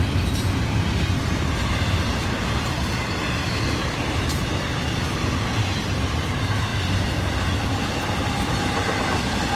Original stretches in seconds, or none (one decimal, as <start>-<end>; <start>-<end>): 0.0-9.6